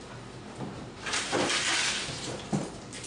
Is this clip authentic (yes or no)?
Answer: no